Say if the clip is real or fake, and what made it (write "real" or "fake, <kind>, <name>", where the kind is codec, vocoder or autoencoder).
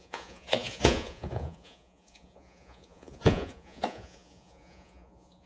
fake, vocoder, Vocos